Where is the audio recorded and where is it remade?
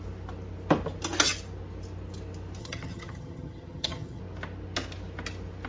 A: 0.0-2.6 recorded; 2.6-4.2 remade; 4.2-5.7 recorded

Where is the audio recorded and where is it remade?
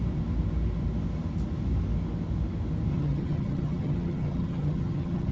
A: 0.0-2.9 recorded; 2.9-5.3 remade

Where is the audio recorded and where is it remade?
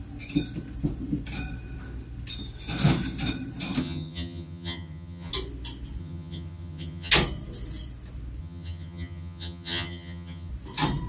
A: 0.0-3.8 recorded; 3.8-5.3 remade; 5.3-6.0 recorded; 6.0-7.1 remade; 7.1-8.4 recorded; 8.4-10.5 remade; 10.5-11.1 recorded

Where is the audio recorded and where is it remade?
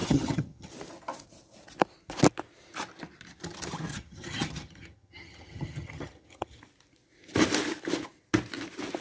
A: 0.0-0.7 remade; 0.7-3.9 recorded; 3.9-6.6 remade; 6.6-9.0 recorded